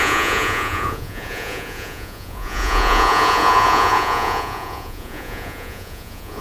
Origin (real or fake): fake